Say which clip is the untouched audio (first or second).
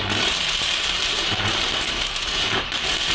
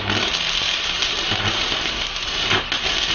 second